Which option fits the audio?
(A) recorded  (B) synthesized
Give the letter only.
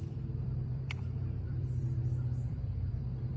B